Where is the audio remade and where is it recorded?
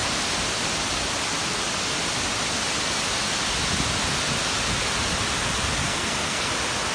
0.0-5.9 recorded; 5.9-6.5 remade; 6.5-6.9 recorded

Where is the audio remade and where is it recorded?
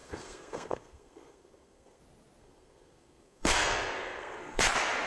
0.0-2.0 remade; 2.0-2.4 recorded; 2.4-4.6 remade; 4.6-5.1 recorded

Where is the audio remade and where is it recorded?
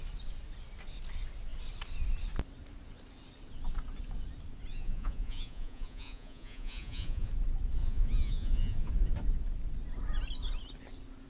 0.0-4.7 recorded; 4.7-7.3 remade; 7.3-7.8 recorded; 7.8-8.9 remade; 8.9-11.3 recorded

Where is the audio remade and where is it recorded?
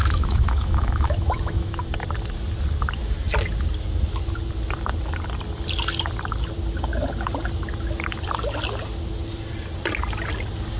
0.0-1.8 remade; 1.8-10.8 recorded